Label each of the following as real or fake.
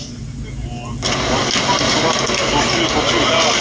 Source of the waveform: real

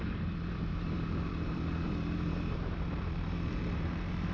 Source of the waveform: fake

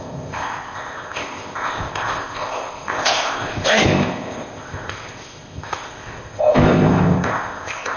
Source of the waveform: fake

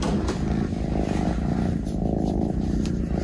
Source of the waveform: real